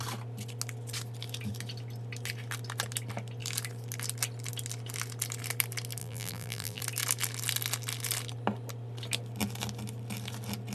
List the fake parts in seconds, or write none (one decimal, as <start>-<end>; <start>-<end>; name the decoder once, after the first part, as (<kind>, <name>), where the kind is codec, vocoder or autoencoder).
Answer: 6.0-6.8 (vocoder, BigVGAN v2)